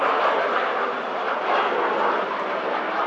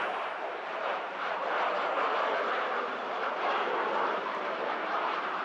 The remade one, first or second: second